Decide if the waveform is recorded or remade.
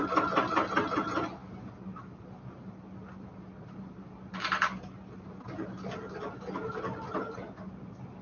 recorded